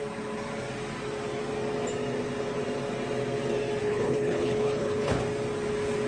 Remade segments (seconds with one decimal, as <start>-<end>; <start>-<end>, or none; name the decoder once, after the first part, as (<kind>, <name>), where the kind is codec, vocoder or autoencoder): 3.8-5.2 (codec, HILCodec)